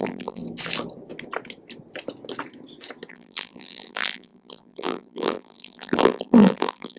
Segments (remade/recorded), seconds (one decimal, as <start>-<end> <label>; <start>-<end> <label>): 0.0-0.4 remade; 0.4-3.1 recorded; 3.1-7.0 remade